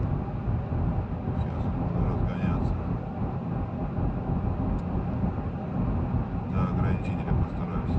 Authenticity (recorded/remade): recorded